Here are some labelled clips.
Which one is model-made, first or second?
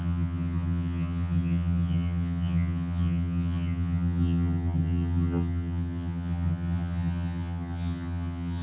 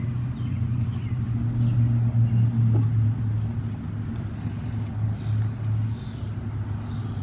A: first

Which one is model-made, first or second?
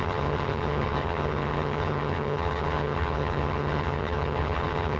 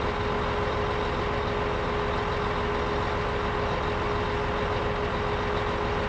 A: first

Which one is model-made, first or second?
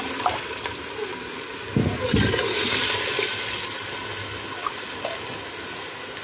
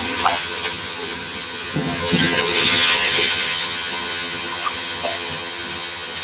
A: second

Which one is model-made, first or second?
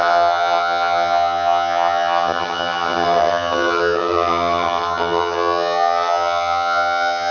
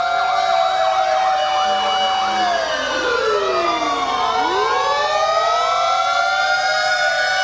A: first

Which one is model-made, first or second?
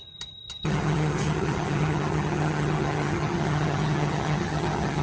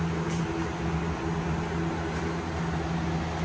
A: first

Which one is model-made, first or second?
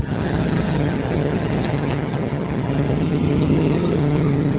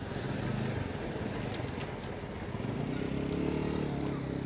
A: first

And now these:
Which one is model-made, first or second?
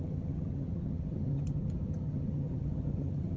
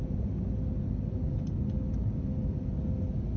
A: first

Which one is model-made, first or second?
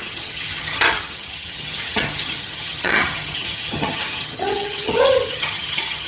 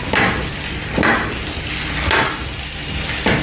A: first